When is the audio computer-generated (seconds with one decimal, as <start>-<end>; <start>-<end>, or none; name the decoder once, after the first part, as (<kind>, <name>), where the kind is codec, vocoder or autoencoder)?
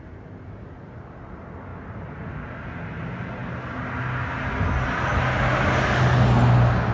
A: none